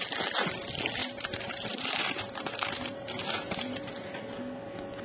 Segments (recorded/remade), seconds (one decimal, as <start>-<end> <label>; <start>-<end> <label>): 0.0-1.0 recorded; 1.0-3.9 remade; 3.9-5.0 recorded